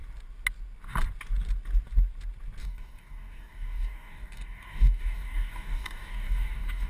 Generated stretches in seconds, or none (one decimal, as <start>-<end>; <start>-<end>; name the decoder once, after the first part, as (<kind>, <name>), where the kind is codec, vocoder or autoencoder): 2.6-6.9 (codec, DAC)